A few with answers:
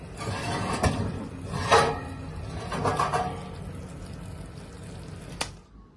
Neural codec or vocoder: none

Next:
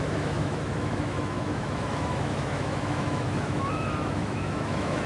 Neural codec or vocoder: autoencoder, DAC-VAE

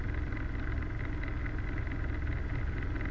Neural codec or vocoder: none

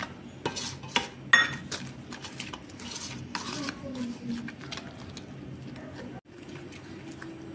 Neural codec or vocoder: none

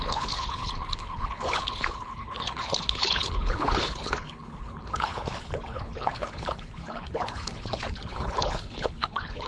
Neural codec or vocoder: codec, HILCodec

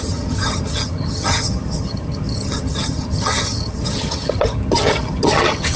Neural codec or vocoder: vocoder, HiFi-GAN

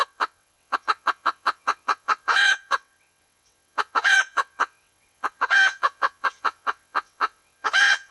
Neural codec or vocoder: vocoder, WaveNeXt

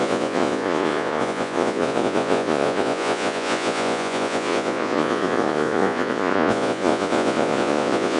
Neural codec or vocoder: vocoder, Vocos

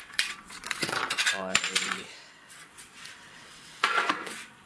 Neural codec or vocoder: vocoder, WaveNeXt